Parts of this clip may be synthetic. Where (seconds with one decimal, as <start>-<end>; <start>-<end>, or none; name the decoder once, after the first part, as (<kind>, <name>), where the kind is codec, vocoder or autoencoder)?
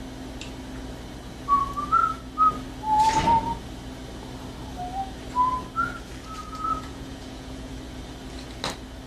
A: 6.4-7.7 (vocoder, Vocos)